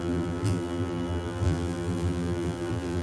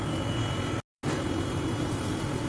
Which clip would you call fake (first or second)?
first